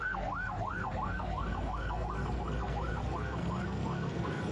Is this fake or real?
fake